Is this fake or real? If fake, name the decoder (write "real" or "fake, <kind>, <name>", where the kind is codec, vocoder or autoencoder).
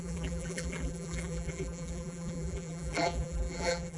fake, vocoder, BigVGAN v2